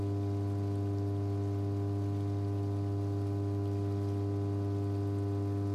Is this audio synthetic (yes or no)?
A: no